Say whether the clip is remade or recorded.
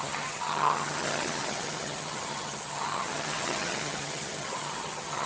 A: remade